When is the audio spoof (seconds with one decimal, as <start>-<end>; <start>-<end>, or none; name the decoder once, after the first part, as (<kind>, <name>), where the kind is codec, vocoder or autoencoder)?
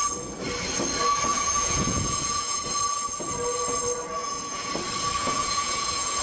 1.3-2.6 (vocoder, Vocos); 4.2-4.7; 5.2-6.2